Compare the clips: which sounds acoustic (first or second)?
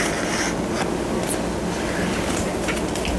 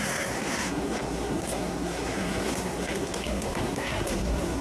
first